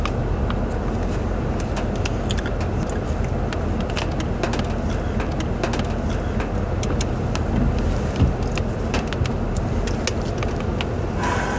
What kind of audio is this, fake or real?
real